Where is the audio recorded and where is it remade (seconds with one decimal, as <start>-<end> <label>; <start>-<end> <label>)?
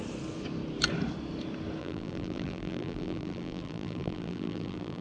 0.0-1.8 recorded; 1.8-5.0 remade